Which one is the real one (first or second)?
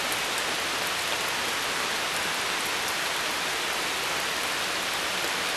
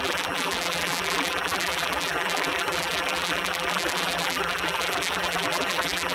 first